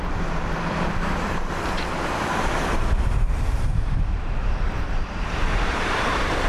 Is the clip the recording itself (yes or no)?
no